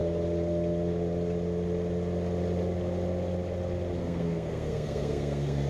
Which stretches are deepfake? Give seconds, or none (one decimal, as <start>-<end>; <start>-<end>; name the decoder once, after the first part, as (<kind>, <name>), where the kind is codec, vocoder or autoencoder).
4.0-5.7 (codec, SNAC)